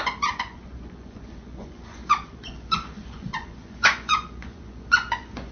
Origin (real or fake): fake